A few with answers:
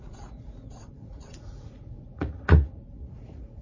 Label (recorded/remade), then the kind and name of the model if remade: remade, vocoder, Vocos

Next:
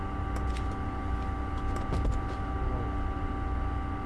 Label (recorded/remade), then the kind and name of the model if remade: recorded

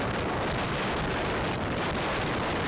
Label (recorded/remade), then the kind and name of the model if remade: recorded